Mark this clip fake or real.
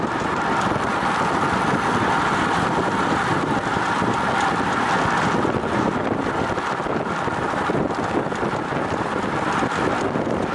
real